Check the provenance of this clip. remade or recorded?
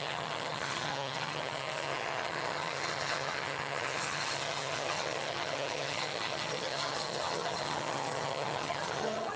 remade